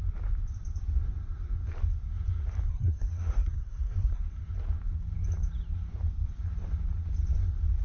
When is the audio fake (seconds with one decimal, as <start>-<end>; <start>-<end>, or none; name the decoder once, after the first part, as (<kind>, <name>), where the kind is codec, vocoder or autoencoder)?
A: 2.7-4.2 (codec, SNAC)